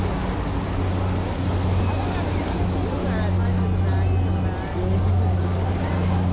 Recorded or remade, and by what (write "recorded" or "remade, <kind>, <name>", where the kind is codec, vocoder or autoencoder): recorded